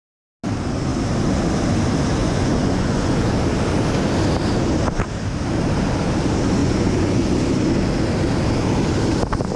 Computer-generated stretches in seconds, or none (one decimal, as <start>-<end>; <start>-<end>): 2.2-3.3; 6.6-7.3